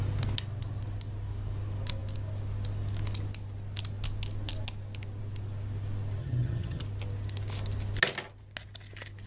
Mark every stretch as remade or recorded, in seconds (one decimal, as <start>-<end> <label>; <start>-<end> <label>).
0.0-6.2 recorded; 6.2-6.8 remade; 6.8-9.3 recorded

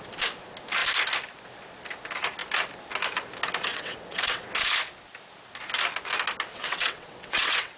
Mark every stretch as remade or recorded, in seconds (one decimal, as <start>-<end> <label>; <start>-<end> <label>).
0.0-3.7 recorded; 3.7-4.5 remade; 4.5-6.5 recorded; 6.5-7.8 remade

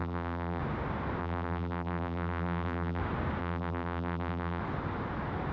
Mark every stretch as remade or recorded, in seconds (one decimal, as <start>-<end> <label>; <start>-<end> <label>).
0.0-0.6 remade; 0.6-1.2 recorded; 1.2-3.0 remade; 3.0-3.4 recorded; 3.4-4.6 remade; 4.6-5.5 recorded

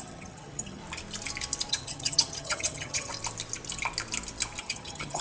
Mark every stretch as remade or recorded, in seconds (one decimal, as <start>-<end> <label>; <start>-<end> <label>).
0.0-0.8 remade; 0.8-1.7 recorded; 1.7-3.1 remade; 3.1-4.6 recorded; 4.6-5.2 remade